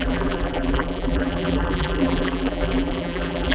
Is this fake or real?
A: fake